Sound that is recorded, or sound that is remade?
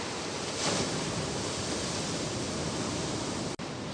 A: recorded